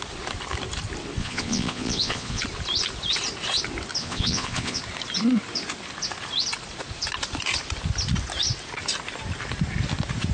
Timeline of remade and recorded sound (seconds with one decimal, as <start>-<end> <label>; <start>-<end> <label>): 0.0-1.2 recorded; 1.2-2.4 remade; 2.4-4.0 recorded; 4.0-4.8 remade; 4.8-10.3 recorded